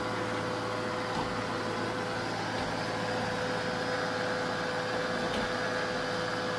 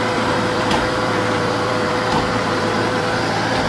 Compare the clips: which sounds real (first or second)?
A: first